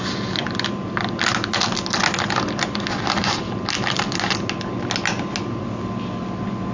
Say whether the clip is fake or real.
real